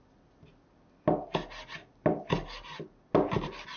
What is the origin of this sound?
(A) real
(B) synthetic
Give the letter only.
A